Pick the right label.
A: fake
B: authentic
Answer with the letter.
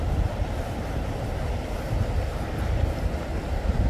B